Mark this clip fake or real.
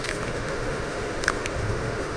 fake